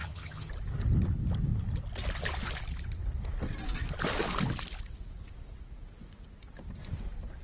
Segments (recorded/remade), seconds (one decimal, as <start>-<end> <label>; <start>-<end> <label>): 0.0-0.5 remade; 0.5-7.4 recorded